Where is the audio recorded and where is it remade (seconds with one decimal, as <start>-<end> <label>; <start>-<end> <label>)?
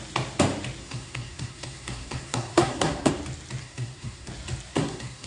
0.0-0.8 recorded; 0.8-3.1 remade; 3.1-3.6 recorded; 3.6-4.3 remade; 4.3-4.7 recorded; 4.7-5.3 remade